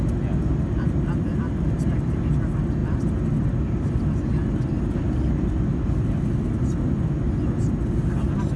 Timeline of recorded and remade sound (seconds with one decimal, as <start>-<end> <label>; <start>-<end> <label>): 0.0-8.6 recorded